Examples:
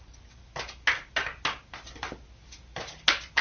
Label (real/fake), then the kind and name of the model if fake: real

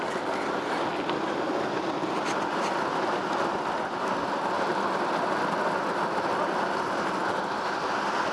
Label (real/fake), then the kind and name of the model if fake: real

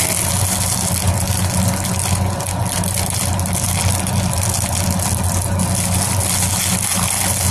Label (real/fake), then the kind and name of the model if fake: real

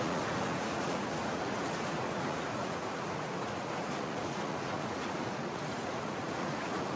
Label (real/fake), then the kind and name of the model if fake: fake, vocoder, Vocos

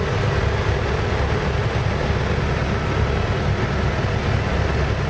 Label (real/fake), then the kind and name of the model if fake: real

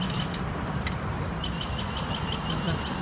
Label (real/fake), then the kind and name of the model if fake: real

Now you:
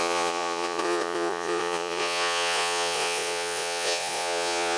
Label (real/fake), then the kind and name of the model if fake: fake, vocoder, Vocos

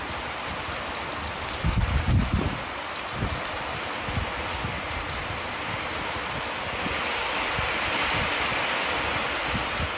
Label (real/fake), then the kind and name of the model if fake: real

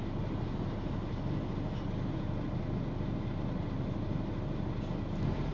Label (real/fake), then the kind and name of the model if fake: real